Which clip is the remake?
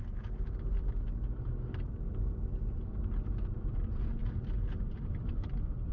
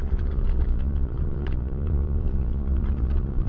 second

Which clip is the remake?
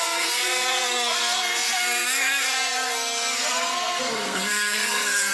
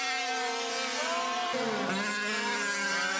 first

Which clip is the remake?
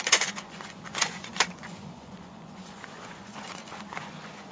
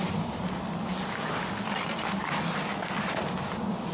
first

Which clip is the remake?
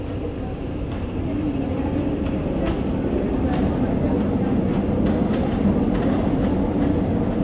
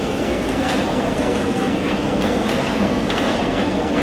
second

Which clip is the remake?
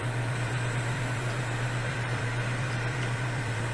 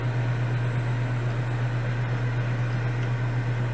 first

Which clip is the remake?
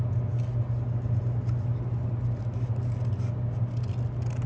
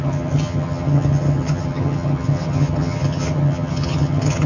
second